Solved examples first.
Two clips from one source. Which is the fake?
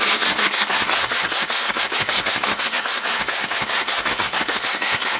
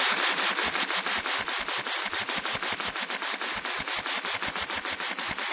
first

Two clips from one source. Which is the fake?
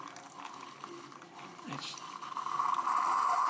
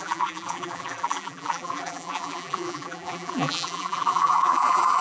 second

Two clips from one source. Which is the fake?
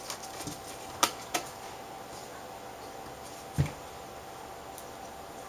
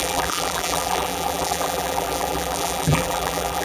second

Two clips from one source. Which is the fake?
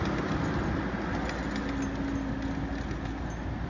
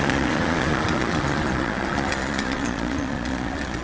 second